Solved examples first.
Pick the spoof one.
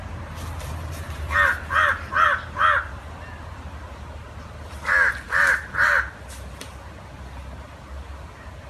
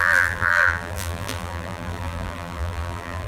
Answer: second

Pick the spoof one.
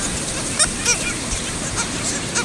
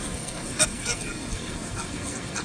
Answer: second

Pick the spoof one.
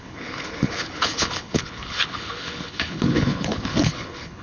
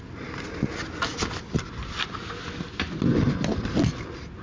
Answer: first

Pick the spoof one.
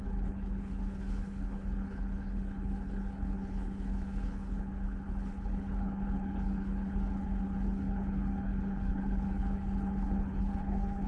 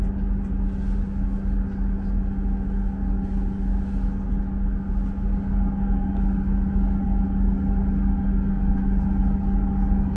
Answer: first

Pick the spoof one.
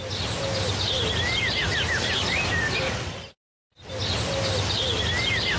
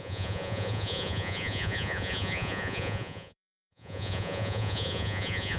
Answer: second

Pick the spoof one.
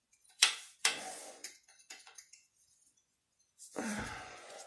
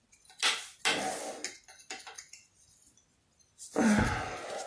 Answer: first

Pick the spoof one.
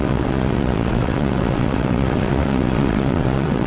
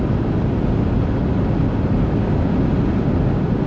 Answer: first